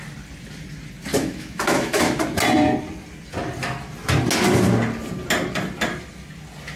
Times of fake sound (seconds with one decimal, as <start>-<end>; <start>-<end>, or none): 1.1-2.0